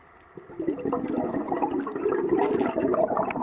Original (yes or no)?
yes